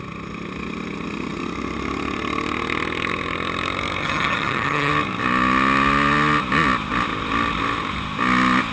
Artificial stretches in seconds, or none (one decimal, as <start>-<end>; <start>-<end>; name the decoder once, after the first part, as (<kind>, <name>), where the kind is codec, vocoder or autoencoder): 4.0-4.9 (vocoder, HiFi-GAN)